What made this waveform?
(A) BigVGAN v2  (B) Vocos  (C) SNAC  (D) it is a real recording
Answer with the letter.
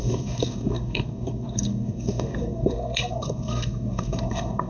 C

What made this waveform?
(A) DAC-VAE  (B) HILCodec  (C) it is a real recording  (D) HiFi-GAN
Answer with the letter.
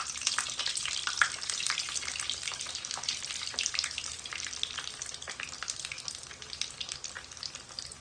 C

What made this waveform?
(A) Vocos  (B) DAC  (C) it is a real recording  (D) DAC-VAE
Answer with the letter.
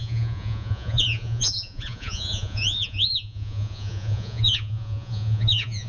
A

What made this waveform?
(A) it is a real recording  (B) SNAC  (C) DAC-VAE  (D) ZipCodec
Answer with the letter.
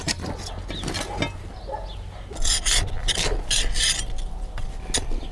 A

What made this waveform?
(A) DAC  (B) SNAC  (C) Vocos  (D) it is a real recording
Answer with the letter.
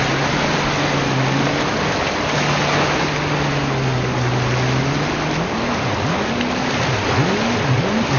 D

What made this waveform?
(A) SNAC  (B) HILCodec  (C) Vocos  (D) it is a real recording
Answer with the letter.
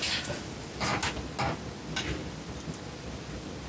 D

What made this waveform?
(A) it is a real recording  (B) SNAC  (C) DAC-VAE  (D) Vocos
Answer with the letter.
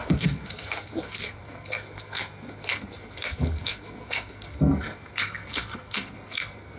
B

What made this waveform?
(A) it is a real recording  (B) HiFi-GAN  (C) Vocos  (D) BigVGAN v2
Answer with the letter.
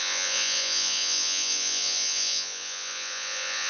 C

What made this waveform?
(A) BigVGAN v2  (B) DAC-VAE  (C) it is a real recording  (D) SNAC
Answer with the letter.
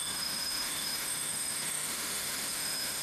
B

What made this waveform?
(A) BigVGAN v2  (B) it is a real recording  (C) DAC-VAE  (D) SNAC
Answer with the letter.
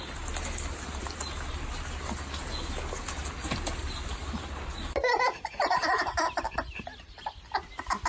B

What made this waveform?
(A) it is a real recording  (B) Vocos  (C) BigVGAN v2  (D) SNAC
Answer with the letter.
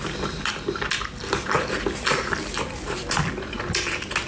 A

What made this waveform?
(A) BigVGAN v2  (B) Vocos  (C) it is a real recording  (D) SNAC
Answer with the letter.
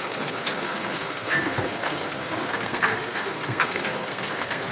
D